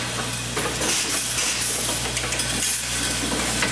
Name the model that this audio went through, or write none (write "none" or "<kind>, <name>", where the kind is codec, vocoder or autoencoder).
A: none